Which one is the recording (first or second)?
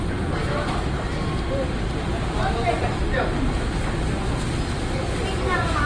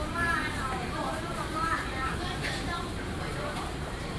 first